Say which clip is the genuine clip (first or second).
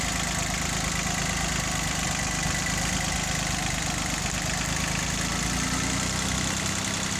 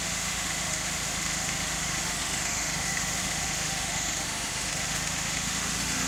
first